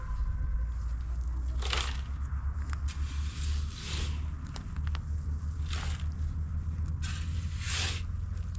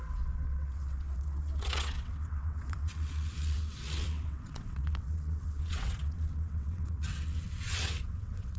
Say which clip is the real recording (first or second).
first